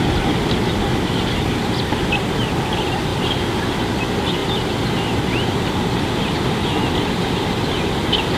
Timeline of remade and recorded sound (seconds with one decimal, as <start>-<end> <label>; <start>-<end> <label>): 0.0-8.4 recorded